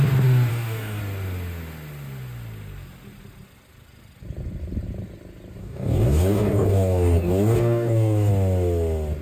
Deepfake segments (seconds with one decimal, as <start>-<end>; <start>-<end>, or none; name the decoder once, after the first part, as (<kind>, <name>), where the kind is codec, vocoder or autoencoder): 0.5-1.0 (codec, DAC); 5.6-8.3